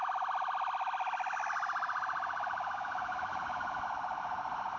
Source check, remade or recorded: recorded